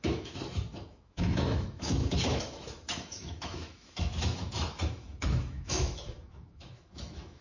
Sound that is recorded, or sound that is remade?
remade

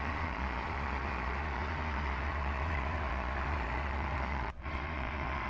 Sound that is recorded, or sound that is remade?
remade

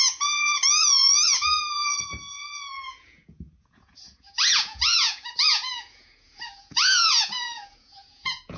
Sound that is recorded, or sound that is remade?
remade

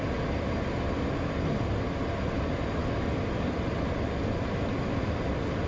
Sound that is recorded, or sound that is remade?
recorded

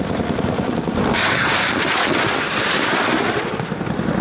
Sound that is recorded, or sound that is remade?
remade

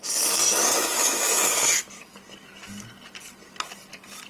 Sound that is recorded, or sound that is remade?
recorded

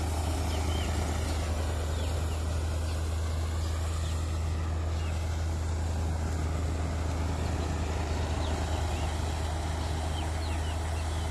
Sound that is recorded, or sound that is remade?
recorded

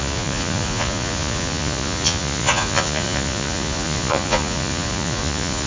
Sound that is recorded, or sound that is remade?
remade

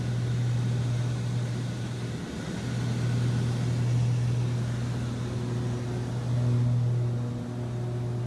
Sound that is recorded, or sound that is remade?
recorded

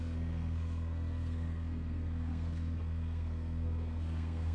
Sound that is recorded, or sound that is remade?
remade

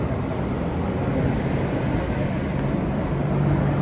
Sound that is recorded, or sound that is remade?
recorded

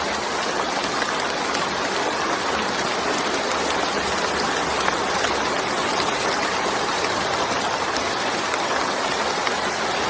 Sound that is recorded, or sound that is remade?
recorded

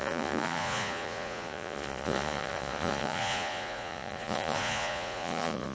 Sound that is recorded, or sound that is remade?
remade